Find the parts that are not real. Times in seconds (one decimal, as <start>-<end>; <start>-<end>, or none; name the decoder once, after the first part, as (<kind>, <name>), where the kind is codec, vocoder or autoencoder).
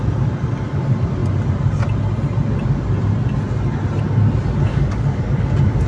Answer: 4.7-5.5 (codec, DAC)